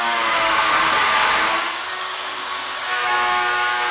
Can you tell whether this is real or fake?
fake